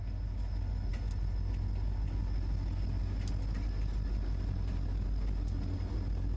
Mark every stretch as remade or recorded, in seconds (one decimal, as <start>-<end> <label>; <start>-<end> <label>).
0.0-6.4 recorded